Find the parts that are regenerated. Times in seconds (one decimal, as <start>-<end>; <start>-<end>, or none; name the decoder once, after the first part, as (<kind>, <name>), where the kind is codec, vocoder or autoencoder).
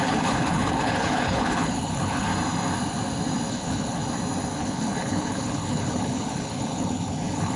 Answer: 0.0-2.3 (codec, HILCodec); 3.5-4.0; 4.6-7.6